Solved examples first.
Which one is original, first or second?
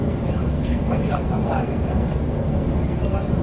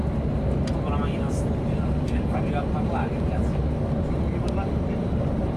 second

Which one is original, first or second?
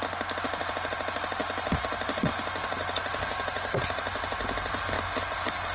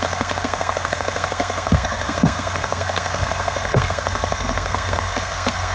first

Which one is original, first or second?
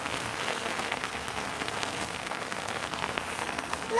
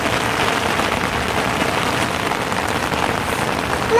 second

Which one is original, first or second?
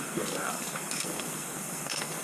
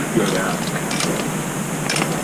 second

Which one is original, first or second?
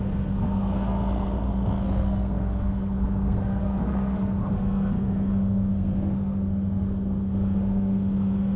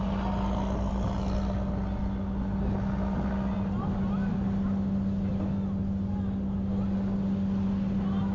second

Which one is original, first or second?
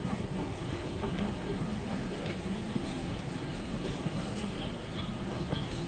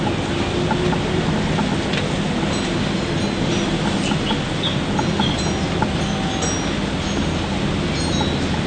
second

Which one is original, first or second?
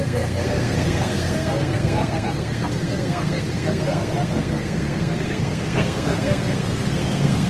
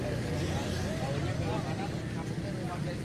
second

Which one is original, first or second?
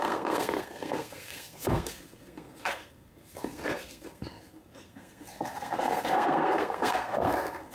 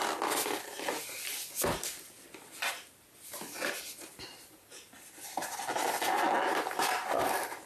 second